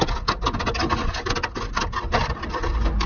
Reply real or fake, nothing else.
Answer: real